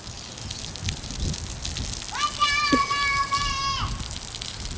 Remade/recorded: recorded